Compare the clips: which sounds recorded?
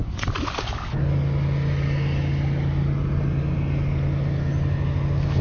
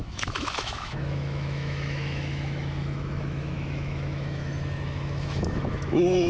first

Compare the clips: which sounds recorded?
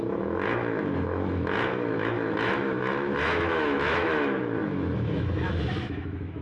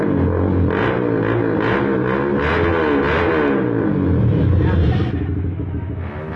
second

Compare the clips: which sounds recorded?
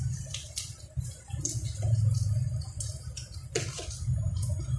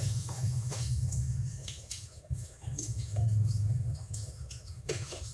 first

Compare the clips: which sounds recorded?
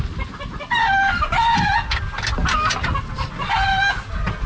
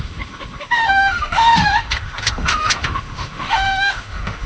first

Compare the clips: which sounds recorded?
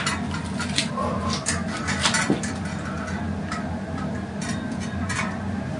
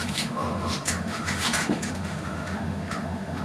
first